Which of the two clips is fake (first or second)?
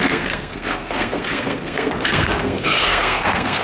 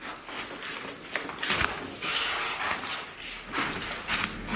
first